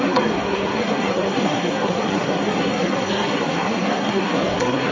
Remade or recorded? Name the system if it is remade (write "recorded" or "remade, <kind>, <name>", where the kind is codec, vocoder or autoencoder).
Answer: remade, codec, SNAC